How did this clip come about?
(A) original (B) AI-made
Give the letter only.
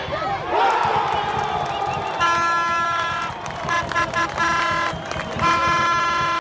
A